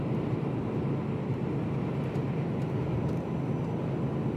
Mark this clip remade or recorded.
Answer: recorded